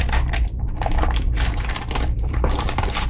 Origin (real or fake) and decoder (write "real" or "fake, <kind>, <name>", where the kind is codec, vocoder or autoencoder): fake, vocoder, BigVGAN v2